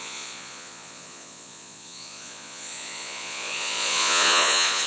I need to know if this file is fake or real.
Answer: fake